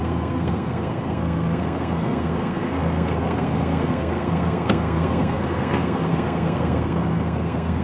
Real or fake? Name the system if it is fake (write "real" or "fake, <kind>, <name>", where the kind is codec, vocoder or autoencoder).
fake, codec, SNAC